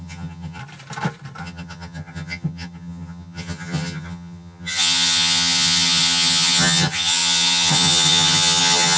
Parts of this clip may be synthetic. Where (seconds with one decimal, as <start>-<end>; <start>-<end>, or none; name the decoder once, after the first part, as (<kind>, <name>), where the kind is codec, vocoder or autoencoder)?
0.0-0.6 (vocoder, HiFi-GAN); 1.4-9.0